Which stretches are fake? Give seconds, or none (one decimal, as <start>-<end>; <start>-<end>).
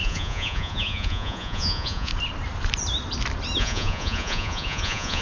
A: 0.0-2.1; 3.6-5.2